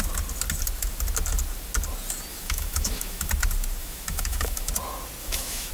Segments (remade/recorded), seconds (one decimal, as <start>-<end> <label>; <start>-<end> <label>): 0.0-2.3 recorded; 2.3-3.3 remade; 3.3-3.8 recorded; 3.8-4.7 remade; 4.7-5.2 recorded; 5.2-5.7 remade